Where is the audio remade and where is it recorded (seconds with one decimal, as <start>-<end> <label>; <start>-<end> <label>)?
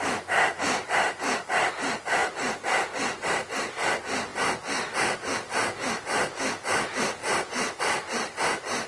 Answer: 0.0-8.9 recorded